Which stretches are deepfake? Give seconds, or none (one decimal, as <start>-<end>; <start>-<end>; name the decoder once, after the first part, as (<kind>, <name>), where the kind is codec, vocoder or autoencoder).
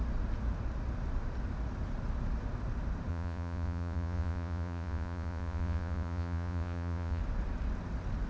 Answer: 3.1-7.2 (vocoder, Vocos)